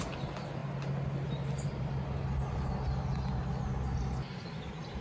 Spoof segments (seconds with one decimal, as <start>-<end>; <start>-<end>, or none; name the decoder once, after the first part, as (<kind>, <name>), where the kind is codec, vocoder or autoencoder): none